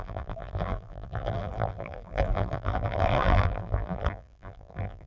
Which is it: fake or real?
fake